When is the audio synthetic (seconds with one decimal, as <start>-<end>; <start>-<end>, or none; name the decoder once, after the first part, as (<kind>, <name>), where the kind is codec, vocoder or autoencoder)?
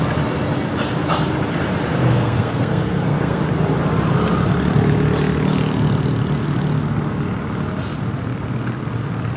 2.0-3.4 (codec, SNAC)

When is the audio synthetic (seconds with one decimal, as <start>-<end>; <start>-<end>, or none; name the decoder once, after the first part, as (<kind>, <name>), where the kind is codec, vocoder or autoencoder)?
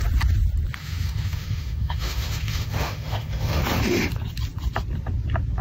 0.8-3.6 (autoencoder, DAC-VAE)